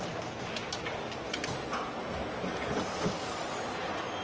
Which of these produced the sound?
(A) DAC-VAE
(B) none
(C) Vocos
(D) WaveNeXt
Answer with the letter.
B